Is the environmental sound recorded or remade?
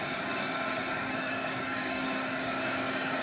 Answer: remade